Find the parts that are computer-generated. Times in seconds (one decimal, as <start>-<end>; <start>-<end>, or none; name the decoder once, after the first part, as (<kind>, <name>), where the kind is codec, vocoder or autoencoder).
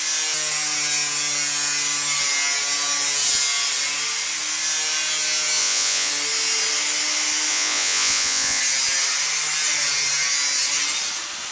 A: 5.6-6.1 (vocoder, Vocos); 7.5-8.6